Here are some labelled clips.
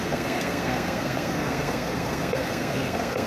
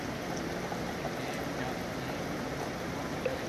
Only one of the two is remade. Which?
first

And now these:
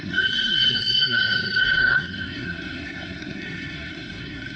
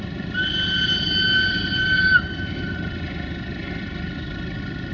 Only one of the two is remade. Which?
first